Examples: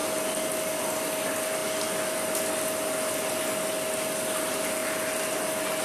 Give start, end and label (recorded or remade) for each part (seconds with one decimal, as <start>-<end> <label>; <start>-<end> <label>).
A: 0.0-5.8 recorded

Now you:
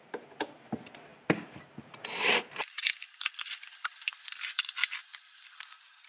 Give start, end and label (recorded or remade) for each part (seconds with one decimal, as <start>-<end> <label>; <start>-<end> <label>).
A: 0.0-1.1 recorded; 1.1-3.7 remade; 3.7-4.8 recorded; 4.8-5.6 remade; 5.6-6.1 recorded

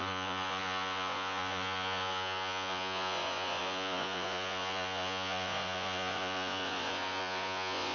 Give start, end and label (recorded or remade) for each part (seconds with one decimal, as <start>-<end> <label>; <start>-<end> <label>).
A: 0.0-7.9 remade

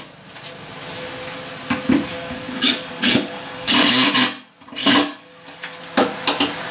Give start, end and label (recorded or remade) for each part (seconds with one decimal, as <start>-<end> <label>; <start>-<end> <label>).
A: 0.0-2.1 recorded; 2.1-3.9 remade; 3.9-4.8 recorded; 4.8-5.8 remade; 5.8-6.7 recorded